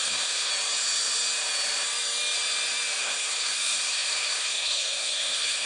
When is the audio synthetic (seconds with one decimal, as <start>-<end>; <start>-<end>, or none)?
0.0-0.5; 3.0-5.7